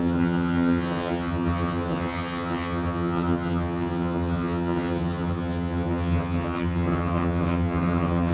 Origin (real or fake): fake